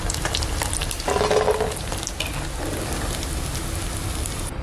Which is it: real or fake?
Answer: real